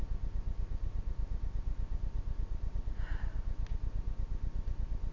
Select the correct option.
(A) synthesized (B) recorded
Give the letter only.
B